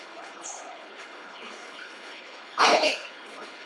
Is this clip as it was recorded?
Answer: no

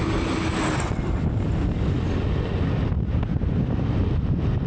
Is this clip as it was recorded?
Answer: yes